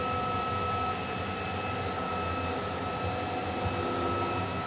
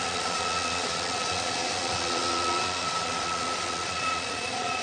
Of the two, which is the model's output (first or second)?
second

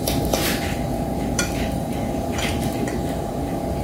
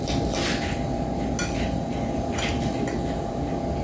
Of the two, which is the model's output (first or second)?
first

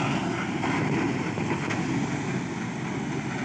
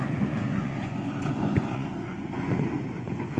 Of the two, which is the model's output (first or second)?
second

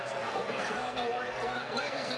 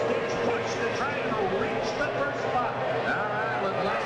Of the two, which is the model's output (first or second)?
first